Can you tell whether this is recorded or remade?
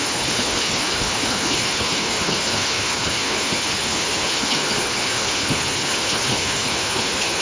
remade